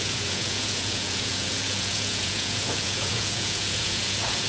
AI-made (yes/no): yes